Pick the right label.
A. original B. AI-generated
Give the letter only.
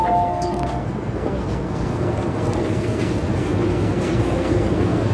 B